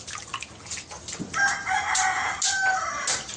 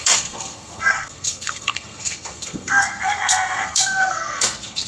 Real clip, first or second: first